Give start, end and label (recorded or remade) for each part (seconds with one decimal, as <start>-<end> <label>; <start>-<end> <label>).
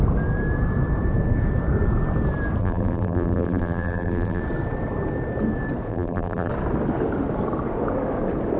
0.0-2.6 recorded; 2.6-4.4 remade; 4.4-5.9 recorded; 5.9-6.5 remade; 6.5-8.6 recorded